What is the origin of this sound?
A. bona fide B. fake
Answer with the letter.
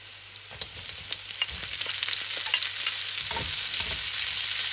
A